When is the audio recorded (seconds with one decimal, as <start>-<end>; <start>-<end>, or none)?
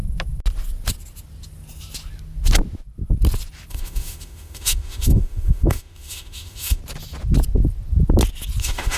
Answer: 0.0-3.7; 6.8-8.6